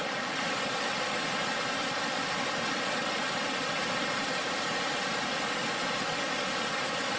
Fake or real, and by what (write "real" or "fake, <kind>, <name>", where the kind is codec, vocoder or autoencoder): real